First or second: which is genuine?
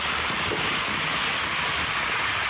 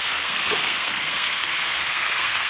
first